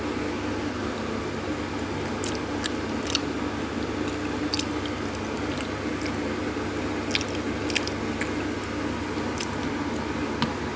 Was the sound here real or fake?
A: real